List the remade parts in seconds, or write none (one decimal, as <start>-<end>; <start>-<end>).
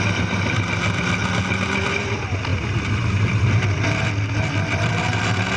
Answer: none